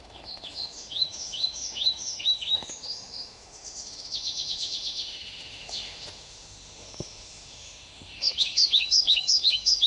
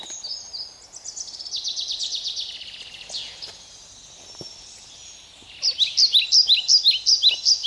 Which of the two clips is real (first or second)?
second